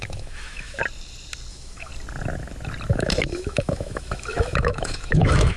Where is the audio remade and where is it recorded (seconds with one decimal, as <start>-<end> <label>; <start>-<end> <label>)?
0.0-0.8 remade; 0.8-1.5 recorded; 1.5-1.9 remade; 1.9-2.9 recorded; 2.9-5.6 remade